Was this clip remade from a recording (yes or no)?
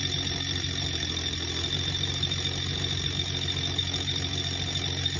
no